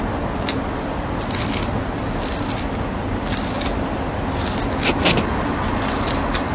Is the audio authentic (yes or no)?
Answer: yes